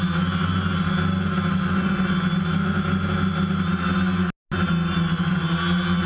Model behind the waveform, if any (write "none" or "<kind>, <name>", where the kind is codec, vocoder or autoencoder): none